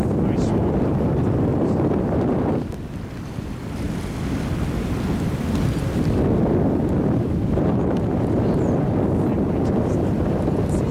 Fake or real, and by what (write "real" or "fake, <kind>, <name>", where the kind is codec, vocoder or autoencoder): real